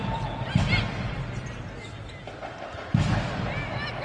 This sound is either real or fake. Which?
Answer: real